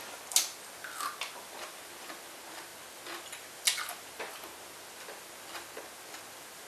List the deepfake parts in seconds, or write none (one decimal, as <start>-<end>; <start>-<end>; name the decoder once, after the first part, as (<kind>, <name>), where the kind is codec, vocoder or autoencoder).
none